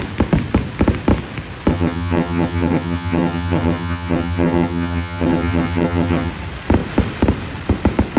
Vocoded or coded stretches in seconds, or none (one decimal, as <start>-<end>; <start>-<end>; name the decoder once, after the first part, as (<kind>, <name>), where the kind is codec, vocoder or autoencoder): 1.7-6.3 (vocoder, HiFi-GAN)